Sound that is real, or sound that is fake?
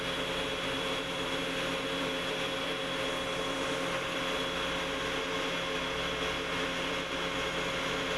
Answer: real